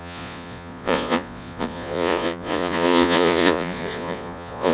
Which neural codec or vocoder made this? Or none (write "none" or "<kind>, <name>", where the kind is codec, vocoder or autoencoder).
vocoder, Vocos